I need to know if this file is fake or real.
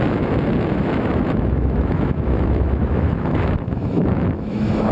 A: fake